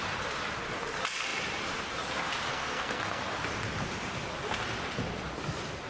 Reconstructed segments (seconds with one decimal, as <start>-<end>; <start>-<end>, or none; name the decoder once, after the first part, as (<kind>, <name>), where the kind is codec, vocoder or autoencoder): 2.5-3.2 (codec, SNAC)